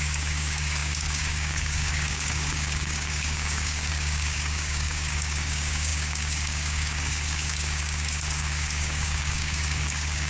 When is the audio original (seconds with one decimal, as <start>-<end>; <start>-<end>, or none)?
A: none